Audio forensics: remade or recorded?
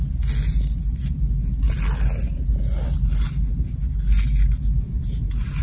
recorded